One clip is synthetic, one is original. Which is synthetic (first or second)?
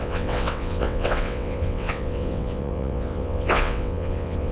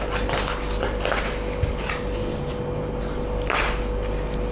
first